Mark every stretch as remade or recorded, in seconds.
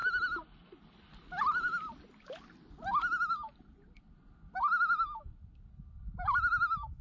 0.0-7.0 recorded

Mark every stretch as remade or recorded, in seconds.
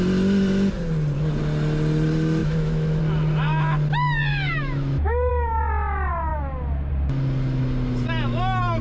0.0-2.4 recorded; 2.4-3.0 remade; 3.0-4.3 recorded; 4.3-5.3 remade; 5.3-8.8 recorded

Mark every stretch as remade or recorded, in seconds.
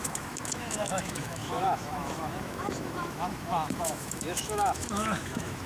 0.0-5.7 remade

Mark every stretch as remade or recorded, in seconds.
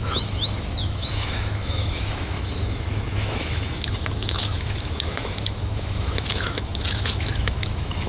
0.0-8.1 remade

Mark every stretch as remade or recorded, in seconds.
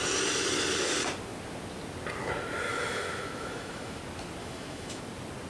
0.0-2.7 recorded; 2.7-4.0 remade; 4.0-4.4 recorded; 4.4-5.0 remade; 5.0-5.5 recorded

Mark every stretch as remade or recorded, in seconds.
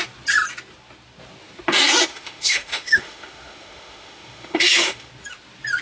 0.0-2.1 recorded; 2.1-5.1 remade; 5.1-5.8 recorded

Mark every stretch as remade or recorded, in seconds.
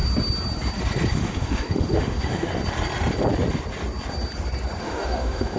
0.0-1.1 recorded; 1.1-2.5 remade; 2.5-4.8 recorded; 4.8-5.6 remade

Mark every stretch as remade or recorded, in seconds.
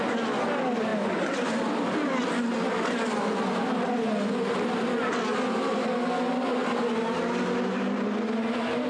0.0-8.9 recorded